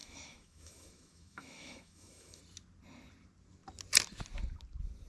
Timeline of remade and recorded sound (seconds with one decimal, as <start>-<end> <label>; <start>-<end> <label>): 0.0-2.4 remade; 2.4-5.1 recorded